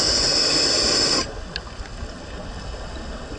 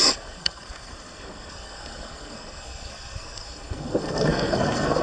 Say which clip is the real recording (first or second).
first